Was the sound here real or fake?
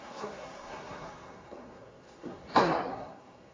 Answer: fake